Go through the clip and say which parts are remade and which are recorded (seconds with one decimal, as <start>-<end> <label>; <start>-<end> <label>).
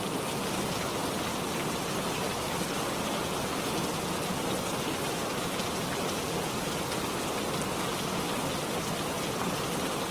0.0-10.1 recorded